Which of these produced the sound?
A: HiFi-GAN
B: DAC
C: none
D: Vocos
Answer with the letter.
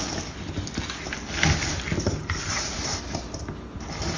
C